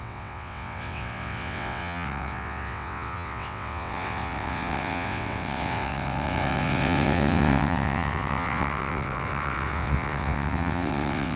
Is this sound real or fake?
fake